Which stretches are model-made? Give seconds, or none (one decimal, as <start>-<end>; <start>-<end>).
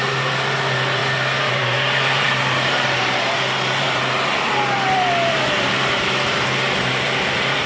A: 0.0-1.0; 1.5-7.7